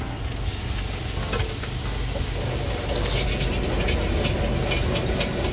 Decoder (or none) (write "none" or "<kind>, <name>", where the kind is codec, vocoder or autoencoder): none